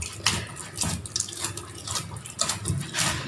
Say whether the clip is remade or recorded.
recorded